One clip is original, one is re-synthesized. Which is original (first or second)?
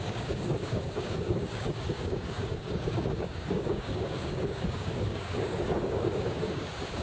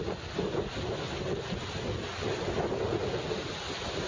second